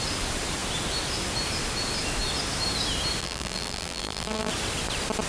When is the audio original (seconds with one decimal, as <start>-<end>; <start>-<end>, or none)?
0.0-3.2; 4.5-5.3